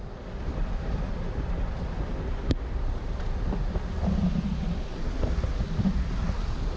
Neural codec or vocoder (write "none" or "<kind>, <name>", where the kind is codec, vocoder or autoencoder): none